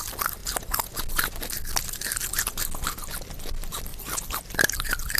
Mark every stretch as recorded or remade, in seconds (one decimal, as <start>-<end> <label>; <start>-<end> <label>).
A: 0.0-0.4 remade; 0.4-3.5 recorded; 3.5-3.9 remade; 3.9-4.5 recorded; 4.5-5.2 remade

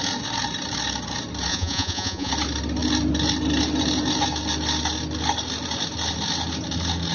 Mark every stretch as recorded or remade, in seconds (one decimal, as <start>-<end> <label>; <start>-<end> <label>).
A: 0.0-1.5 recorded; 1.5-2.3 remade; 2.3-7.1 recorded